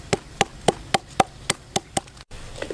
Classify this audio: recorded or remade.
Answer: recorded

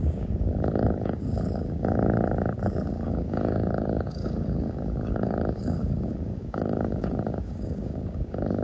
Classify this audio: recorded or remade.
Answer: remade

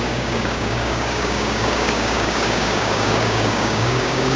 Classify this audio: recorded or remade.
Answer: remade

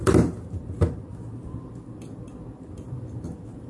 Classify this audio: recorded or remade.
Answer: recorded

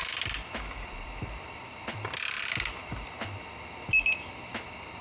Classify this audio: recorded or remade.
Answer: recorded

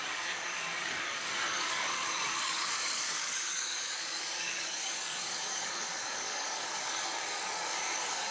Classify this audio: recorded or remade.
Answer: remade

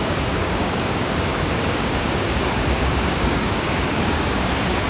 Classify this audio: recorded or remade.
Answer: remade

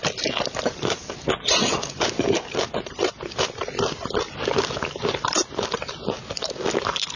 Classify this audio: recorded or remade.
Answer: recorded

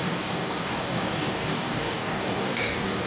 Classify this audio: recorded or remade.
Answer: remade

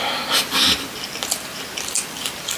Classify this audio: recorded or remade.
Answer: recorded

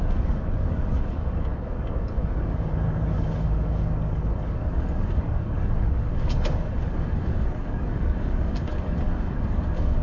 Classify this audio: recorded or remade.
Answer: remade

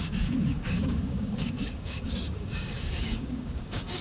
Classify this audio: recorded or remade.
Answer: remade